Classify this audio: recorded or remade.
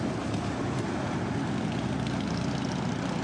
recorded